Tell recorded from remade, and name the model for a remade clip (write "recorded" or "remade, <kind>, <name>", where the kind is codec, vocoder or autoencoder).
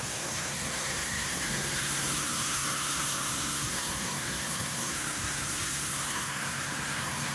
remade, codec, SNAC